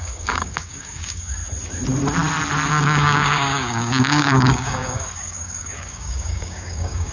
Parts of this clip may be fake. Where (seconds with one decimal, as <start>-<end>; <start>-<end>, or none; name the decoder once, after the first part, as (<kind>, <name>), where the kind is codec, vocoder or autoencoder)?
0.0-1.4 (codec, DAC); 2.7-7.1